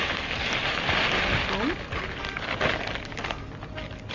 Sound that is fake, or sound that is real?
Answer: real